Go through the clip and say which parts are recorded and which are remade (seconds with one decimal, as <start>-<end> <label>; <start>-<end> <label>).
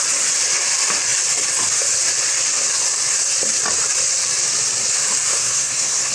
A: 0.0-5.3 recorded; 5.3-6.1 remade